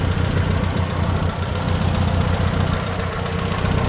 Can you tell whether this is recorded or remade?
recorded